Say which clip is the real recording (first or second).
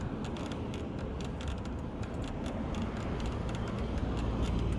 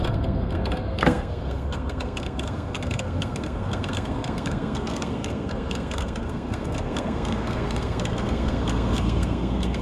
first